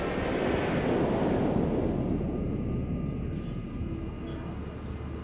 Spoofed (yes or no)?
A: no